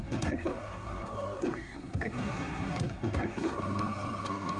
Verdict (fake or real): fake